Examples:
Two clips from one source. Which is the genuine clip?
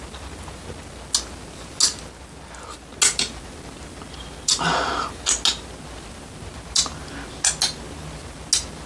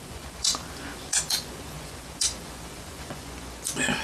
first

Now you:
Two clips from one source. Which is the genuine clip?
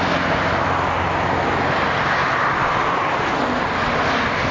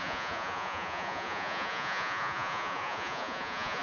first